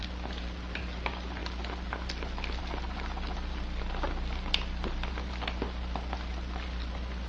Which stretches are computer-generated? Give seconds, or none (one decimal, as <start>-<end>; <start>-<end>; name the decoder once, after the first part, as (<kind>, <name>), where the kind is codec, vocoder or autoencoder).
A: none